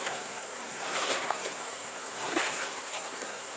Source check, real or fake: fake